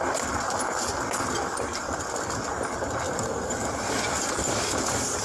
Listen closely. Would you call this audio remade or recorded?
recorded